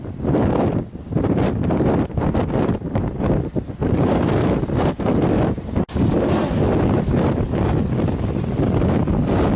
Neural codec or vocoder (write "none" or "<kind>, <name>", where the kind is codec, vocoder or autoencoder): none